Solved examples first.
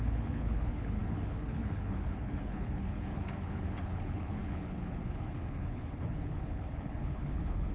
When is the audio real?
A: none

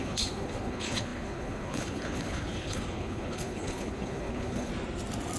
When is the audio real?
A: 4.7-5.4

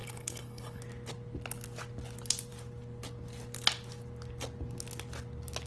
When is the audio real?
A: 0.8-5.7

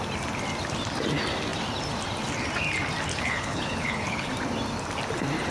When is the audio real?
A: 0.0-3.1; 4.3-5.5